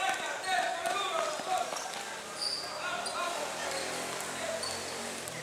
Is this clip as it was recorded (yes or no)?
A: yes